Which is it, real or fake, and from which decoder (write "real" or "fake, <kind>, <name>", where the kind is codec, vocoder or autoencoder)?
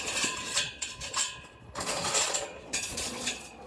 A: fake, vocoder, Vocos